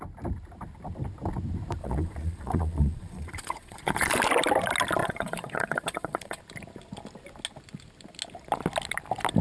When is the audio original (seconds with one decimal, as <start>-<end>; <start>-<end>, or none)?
0.0-1.8; 4.2-5.0; 6.4-9.4